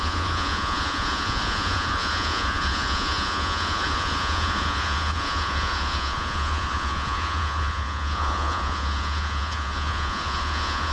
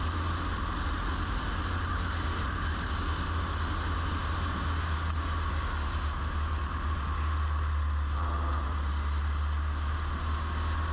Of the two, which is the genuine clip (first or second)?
second